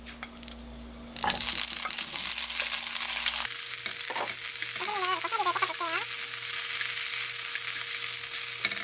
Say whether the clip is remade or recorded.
recorded